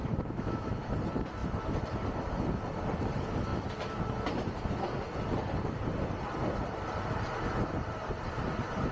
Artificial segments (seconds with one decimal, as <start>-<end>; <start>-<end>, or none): 0.0-0.9